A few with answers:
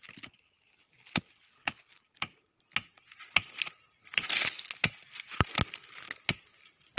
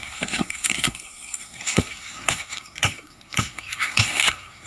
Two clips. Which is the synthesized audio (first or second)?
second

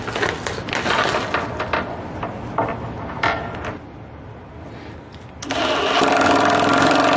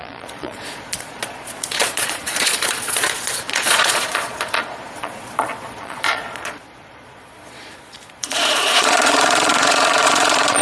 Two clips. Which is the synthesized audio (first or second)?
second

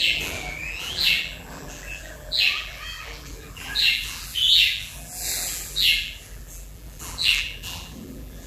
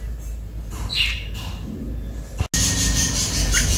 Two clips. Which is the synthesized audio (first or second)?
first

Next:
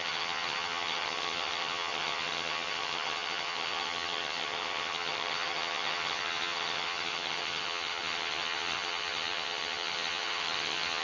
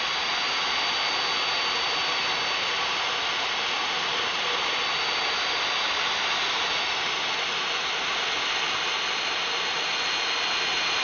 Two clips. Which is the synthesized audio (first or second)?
first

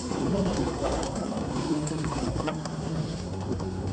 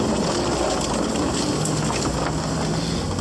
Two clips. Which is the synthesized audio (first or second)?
first